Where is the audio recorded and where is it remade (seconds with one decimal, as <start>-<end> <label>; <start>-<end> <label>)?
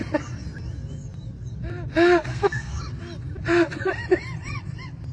0.0-2.3 recorded; 2.3-2.8 remade; 2.8-5.1 recorded